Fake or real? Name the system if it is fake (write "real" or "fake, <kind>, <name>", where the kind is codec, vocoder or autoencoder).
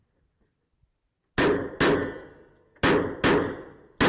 real